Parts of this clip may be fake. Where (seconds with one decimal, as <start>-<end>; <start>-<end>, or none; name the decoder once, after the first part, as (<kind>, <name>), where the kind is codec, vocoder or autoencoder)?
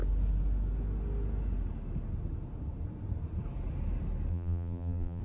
4.3-5.2 (vocoder, BigVGAN v2)